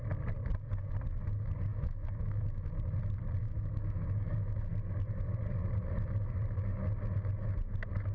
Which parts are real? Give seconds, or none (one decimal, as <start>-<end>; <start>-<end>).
0.0-1.7; 2.7-3.4; 4.7-8.1